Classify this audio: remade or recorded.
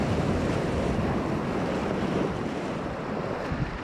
recorded